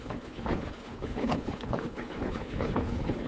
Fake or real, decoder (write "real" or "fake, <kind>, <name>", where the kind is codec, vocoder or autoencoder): fake, codec, HILCodec